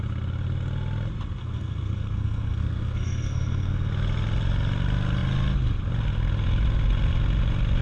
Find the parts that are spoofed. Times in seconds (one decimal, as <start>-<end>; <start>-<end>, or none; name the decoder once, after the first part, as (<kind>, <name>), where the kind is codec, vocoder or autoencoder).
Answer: 1.4-3.9 (codec, SNAC)